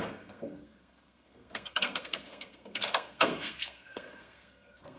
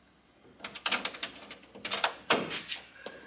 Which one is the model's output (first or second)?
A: first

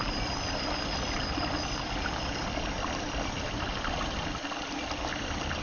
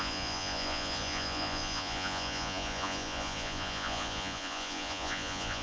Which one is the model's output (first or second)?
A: second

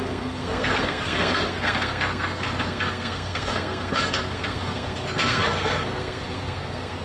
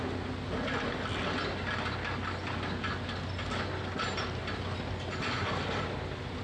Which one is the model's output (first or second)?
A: first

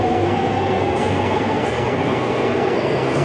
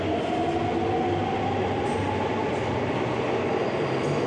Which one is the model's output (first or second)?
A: first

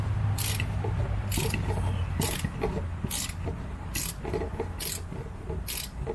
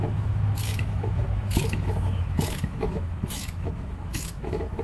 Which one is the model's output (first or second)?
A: second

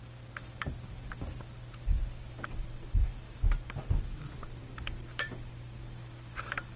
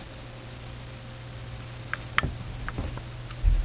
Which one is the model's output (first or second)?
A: first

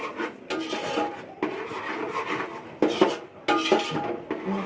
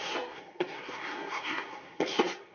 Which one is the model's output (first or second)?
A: second